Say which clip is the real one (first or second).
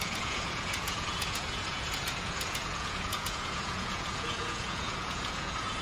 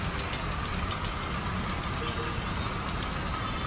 second